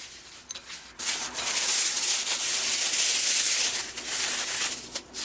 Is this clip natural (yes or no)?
yes